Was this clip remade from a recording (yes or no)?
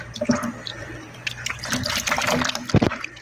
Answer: yes